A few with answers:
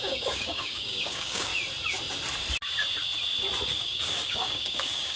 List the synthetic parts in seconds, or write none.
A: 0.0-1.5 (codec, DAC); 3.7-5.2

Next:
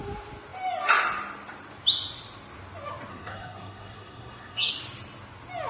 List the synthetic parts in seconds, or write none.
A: 3.1-4.7 (codec, SNAC)

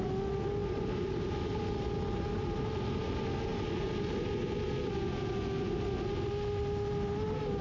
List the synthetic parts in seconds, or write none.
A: none

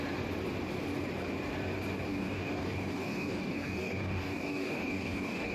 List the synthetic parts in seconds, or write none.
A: 2.1-5.5 (codec, DAC)

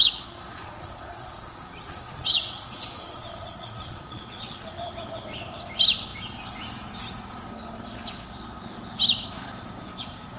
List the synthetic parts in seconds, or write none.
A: 0.0-4.7 (vocoder, Vocos)

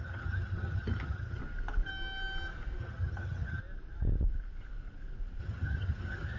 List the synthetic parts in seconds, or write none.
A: 0.0-1.4 (vocoder, HiFi-GAN); 2.8-3.6; 5.4-6.4